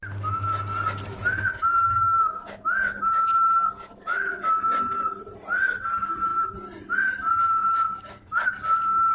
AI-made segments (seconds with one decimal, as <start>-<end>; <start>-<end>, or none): none